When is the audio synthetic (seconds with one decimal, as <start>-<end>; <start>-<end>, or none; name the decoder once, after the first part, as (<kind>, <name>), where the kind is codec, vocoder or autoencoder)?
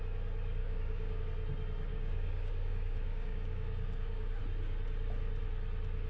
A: 0.6-1.2 (codec, DAC); 1.9-4.4